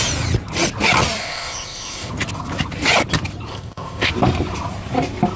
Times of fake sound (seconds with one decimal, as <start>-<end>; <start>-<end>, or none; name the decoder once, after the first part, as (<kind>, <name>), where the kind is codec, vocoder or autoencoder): 1.2-2.1 (codec, ZipCodec); 3.5-4.1